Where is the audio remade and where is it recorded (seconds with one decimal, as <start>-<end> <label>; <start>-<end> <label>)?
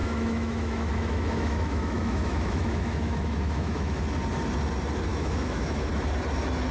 0.0-4.0 remade; 4.0-5.1 recorded; 5.1-5.9 remade; 5.9-6.7 recorded